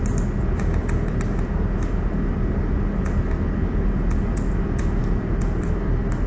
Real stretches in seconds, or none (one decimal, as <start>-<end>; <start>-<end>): 0.0-6.3